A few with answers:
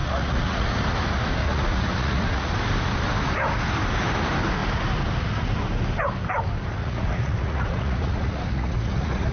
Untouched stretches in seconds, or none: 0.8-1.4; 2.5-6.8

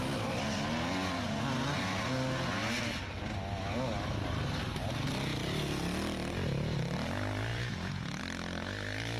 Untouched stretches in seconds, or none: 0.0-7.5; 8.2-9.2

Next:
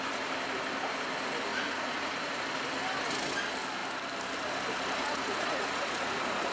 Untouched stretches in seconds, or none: 0.0-1.5; 2.4-5.0